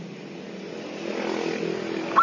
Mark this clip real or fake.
real